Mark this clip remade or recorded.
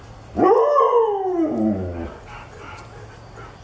recorded